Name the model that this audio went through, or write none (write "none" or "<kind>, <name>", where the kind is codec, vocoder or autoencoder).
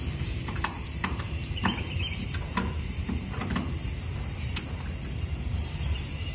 vocoder, BigVGAN v2